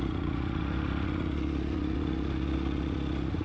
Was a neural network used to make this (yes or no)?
yes